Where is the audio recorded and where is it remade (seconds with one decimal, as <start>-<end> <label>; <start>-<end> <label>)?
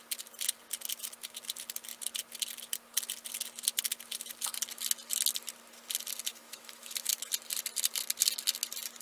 0.0-6.3 recorded; 6.3-7.3 remade; 7.3-9.0 recorded